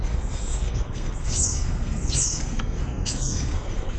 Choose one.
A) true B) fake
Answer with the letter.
B